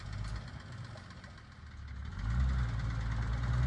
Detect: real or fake real